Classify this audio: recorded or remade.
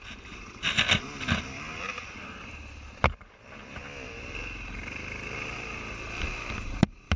recorded